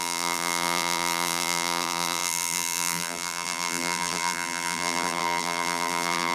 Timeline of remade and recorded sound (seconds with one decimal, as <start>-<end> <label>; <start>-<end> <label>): 0.0-6.3 remade